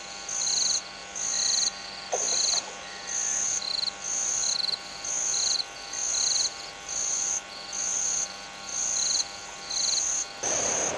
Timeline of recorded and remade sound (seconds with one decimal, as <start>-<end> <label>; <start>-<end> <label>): 0.0-11.0 recorded